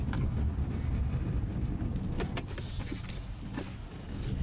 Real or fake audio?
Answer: real